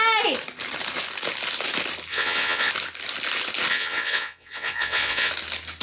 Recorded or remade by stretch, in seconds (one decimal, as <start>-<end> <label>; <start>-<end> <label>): 0.0-2.1 recorded; 2.1-2.7 remade; 2.7-3.7 recorded; 3.7-5.3 remade; 5.3-5.8 recorded